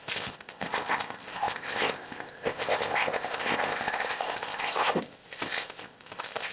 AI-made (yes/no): yes